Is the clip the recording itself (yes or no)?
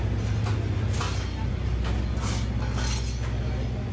yes